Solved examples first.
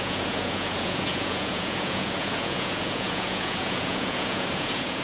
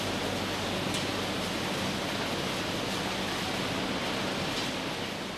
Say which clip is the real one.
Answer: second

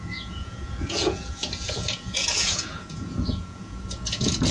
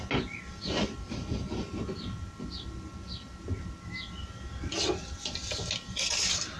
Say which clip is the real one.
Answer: second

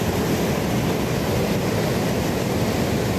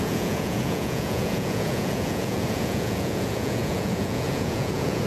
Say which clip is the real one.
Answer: first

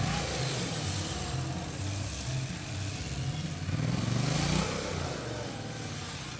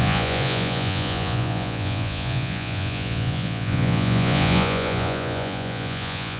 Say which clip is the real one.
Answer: first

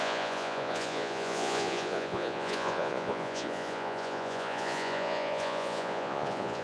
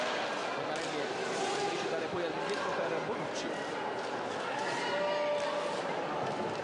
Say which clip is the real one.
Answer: second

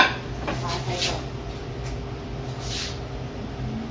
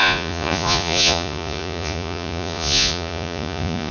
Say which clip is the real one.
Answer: first